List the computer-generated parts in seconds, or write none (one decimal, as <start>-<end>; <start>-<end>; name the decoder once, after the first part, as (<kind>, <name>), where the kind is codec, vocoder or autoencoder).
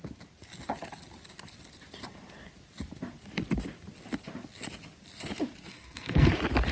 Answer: 5.7-6.3 (codec, SNAC)